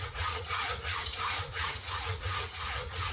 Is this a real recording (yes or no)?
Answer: no